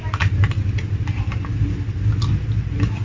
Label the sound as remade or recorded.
recorded